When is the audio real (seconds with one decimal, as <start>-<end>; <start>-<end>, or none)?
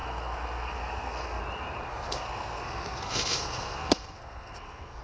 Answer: 1.4-1.9